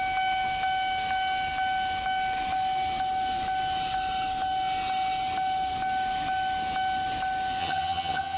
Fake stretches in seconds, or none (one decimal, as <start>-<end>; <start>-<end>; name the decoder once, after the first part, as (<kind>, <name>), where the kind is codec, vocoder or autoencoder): 7.6-8.4 (vocoder, HiFi-GAN)